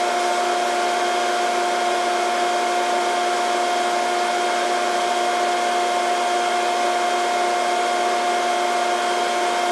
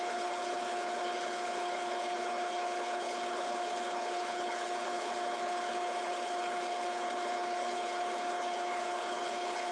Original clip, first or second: first